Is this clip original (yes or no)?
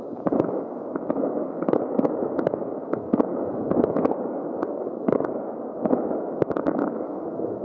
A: no